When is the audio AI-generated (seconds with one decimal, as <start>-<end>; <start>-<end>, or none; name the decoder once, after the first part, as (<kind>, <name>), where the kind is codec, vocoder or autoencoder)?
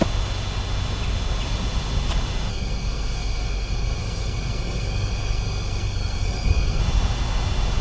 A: 2.5-6.8 (codec, SNAC)